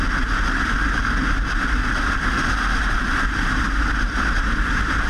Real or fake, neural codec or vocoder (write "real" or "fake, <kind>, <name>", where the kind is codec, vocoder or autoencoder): real